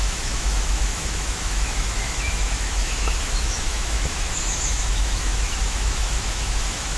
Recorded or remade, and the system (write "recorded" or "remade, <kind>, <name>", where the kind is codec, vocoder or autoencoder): remade, autoencoder, DAC-VAE